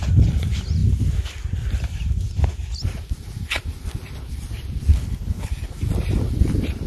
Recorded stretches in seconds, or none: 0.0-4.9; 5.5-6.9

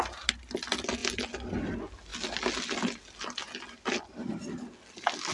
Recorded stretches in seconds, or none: 0.0-5.3

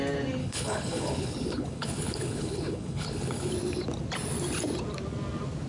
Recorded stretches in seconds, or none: 0.0-0.4; 3.5-5.7